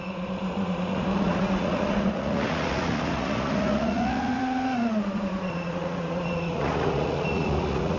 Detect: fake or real fake